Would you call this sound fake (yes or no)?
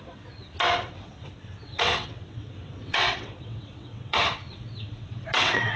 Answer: yes